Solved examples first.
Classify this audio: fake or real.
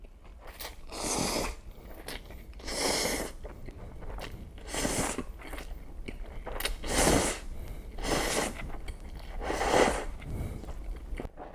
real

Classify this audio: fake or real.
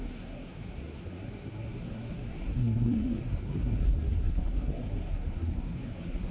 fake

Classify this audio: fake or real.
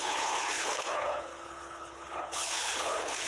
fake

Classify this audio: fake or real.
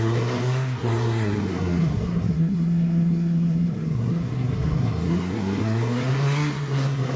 fake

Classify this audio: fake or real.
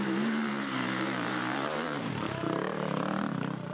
fake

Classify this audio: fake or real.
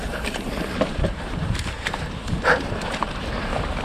fake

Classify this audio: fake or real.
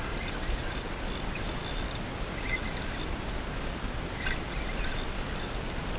real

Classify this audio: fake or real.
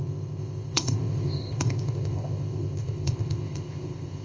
fake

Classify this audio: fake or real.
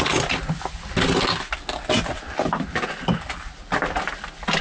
real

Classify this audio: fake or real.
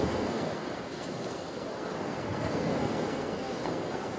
fake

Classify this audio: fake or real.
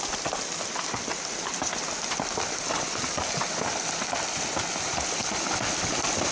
real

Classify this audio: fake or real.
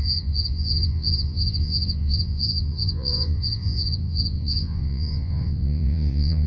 fake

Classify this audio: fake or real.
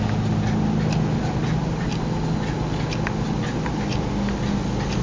real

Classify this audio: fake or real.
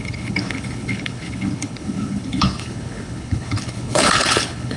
fake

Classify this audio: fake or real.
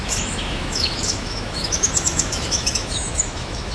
fake